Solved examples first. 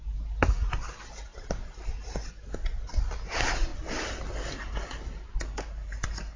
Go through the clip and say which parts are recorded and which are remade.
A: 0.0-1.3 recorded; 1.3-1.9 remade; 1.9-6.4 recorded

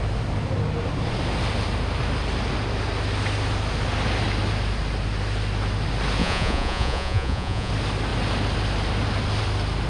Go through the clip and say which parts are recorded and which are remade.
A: 0.0-6.2 recorded; 6.2-7.7 remade; 7.7-9.9 recorded

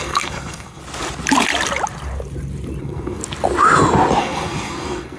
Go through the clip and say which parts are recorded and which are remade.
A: 0.0-0.8 remade; 0.8-2.8 recorded; 2.8-3.2 remade; 3.2-4.2 recorded; 4.2-5.2 remade